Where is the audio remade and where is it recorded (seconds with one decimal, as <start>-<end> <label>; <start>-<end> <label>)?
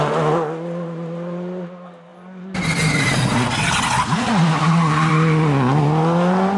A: 0.0-6.6 recorded